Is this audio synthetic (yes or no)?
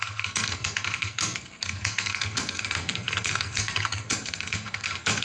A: yes